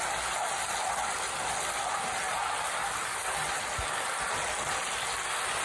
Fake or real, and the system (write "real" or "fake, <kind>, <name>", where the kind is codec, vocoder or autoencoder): real